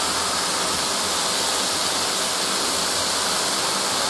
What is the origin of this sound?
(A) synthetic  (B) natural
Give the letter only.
B